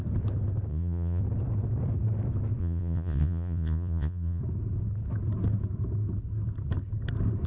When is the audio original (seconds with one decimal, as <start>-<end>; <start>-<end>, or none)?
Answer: 0.0-0.7; 1.2-2.6; 4.4-7.5